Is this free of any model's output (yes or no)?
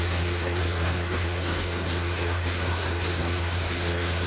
no